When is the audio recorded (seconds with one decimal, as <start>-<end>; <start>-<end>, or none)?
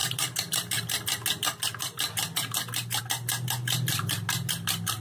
0.0-5.0